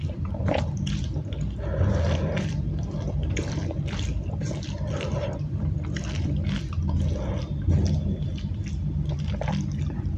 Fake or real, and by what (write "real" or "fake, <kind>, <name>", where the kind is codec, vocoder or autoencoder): fake, vocoder, BigVGAN v2